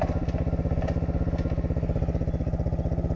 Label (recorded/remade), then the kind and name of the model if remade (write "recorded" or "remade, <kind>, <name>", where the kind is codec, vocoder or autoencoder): recorded